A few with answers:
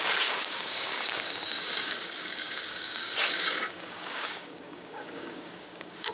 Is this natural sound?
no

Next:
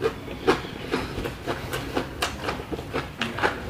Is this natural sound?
yes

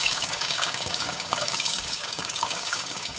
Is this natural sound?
no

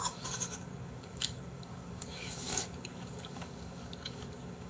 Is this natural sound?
no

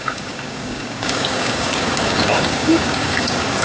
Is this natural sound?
no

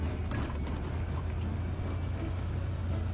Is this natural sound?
yes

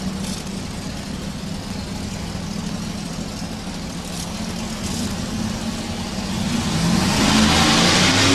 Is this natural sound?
yes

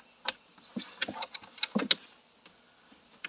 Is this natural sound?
yes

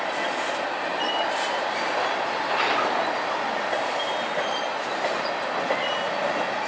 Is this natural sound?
yes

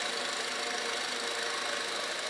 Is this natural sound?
yes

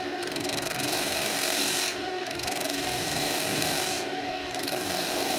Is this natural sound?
no